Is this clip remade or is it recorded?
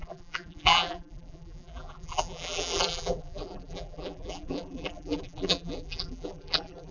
remade